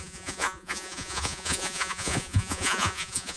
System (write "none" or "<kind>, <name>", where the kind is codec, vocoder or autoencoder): vocoder, Vocos